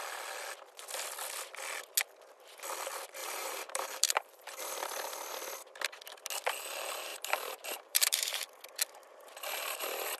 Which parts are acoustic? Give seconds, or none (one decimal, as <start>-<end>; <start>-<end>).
0.0-3.2; 4.7-7.1; 8.4-10.2